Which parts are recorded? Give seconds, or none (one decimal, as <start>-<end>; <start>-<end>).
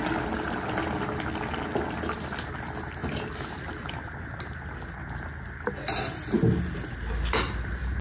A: 0.0-8.0